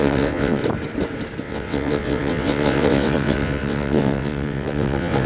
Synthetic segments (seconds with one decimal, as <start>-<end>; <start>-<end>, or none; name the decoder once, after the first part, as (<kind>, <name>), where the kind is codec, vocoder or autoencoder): 0.0-0.6 (vocoder, WaveNeXt); 1.4-5.3